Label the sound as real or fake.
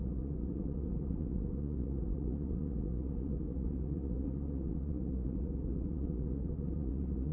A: fake